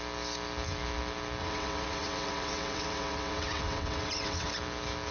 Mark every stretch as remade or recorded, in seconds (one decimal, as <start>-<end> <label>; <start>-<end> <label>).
0.0-1.4 recorded; 1.4-4.5 remade; 4.5-5.1 recorded